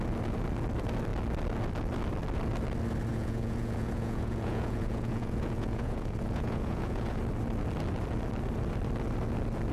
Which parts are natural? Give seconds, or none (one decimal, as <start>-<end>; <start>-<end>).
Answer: 0.0-3.1; 7.2-9.7

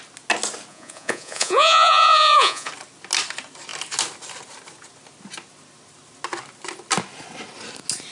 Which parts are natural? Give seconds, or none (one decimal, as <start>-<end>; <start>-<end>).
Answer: 0.0-0.7; 2.7-8.1

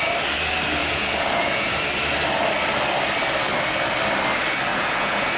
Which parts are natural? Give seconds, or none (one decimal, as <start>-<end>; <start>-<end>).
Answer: 0.0-0.8; 1.8-4.7

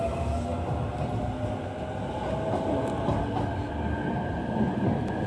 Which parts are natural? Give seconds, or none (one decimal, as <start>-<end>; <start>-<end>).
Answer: 0.0-5.3